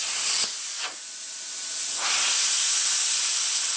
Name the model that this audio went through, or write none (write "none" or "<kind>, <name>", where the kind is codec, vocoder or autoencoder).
none